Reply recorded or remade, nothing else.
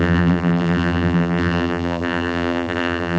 remade